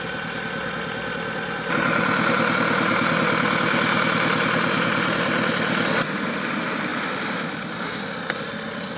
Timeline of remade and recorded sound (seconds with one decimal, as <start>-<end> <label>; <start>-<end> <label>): 0.0-9.0 recorded